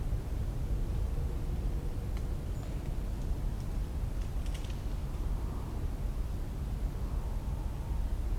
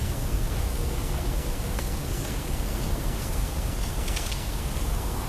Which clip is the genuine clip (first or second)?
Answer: first